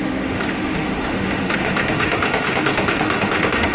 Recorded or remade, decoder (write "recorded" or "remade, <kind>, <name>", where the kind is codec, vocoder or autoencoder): remade, autoencoder, DAC-VAE